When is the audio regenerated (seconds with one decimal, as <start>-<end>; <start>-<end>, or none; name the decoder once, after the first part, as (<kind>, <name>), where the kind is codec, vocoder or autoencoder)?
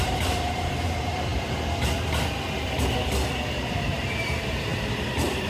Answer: 0.0-1.3 (vocoder, BigVGAN v2); 3.3-5.5